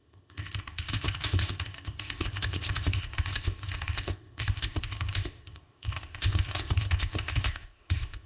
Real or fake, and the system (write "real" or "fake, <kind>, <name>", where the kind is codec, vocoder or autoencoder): fake, codec, ZipCodec